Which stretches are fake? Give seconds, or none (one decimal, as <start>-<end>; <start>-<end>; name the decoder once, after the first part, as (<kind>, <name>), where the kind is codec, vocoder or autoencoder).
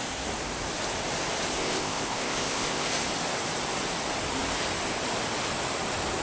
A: 1.6-2.9 (codec, ZipCodec)